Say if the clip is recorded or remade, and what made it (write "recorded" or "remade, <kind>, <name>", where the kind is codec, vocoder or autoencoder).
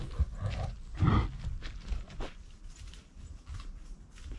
recorded